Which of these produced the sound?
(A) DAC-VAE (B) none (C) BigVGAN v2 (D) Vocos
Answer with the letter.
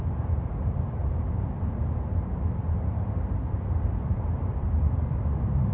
C